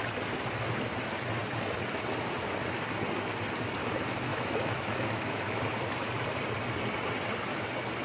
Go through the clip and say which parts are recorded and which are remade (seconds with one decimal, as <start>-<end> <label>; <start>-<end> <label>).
0.0-4.3 recorded; 4.3-5.6 remade; 5.6-8.0 recorded